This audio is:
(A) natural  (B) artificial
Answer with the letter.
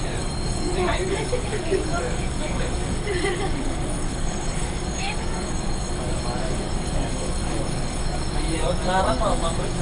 B